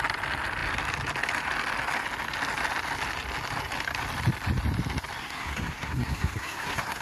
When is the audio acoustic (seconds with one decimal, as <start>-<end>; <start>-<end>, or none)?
0.0-5.2